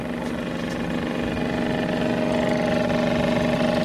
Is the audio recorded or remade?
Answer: recorded